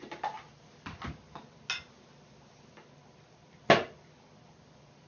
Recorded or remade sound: recorded